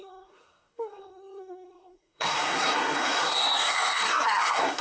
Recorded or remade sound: remade